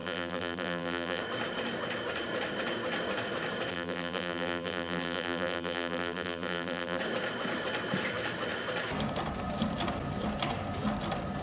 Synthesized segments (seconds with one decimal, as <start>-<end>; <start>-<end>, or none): 0.0-1.2; 3.7-7.0